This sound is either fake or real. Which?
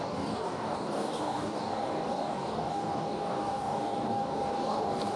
fake